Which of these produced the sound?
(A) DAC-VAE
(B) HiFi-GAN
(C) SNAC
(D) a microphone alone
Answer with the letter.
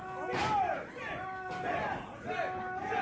D